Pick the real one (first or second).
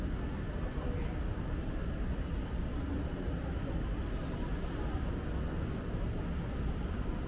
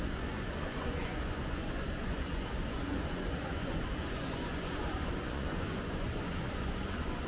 first